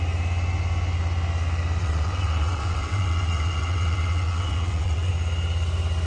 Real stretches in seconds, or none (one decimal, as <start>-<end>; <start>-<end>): 0.0-1.8; 5.1-6.1